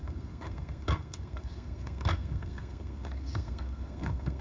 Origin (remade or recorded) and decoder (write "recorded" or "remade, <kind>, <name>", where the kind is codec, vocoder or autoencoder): remade, codec, SNAC